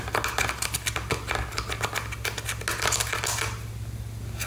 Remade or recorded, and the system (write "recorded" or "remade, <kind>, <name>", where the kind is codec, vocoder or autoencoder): recorded